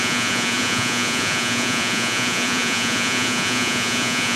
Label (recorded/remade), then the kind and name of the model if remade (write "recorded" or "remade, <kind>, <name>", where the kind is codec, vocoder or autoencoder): remade, vocoder, Vocos